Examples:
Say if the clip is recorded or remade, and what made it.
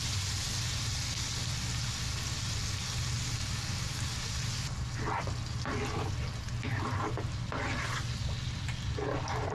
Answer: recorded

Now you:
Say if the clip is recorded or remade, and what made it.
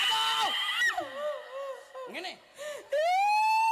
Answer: recorded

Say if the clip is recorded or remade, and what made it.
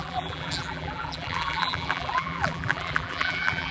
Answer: remade, vocoder, BigVGAN v2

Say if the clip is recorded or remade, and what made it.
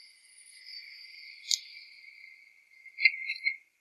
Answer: recorded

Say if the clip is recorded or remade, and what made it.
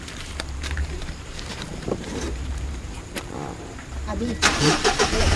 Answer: remade, vocoder, BigVGAN v2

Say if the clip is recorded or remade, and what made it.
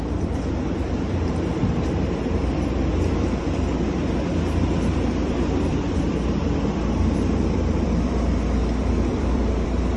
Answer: remade, vocoder, BigVGAN v2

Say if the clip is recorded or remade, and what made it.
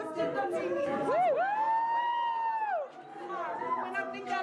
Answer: recorded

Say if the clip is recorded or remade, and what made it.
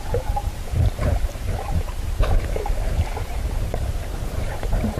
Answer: remade, vocoder, BigVGAN v2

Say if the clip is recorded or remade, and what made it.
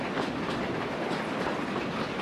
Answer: recorded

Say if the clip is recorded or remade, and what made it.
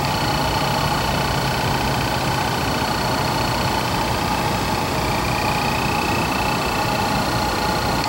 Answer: recorded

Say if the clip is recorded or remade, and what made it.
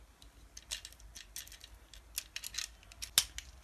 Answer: recorded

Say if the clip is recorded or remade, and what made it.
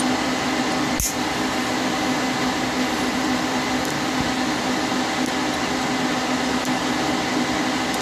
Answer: recorded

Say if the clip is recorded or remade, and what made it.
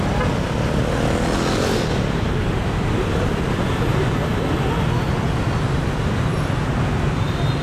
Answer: recorded